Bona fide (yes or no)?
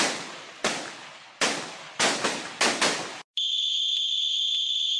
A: yes